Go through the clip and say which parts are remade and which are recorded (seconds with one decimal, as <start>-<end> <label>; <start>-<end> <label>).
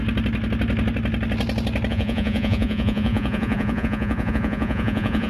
0.0-1.9 recorded; 1.9-5.3 remade